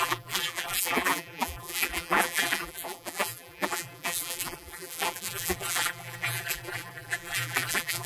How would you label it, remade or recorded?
remade